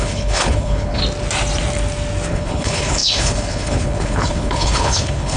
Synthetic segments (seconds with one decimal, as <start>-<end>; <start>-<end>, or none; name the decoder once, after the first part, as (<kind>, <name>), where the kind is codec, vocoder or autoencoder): 0.0-1.0 (codec, HILCodec); 2.3-5.4